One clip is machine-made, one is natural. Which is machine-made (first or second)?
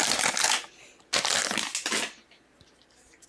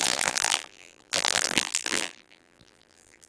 second